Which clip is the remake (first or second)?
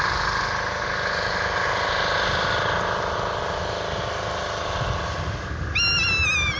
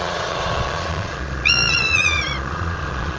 second